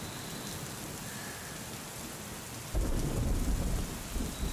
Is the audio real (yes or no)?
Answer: yes